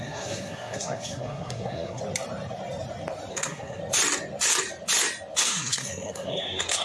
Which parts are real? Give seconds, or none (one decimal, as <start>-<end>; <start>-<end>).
2.0-3.3; 3.8-5.4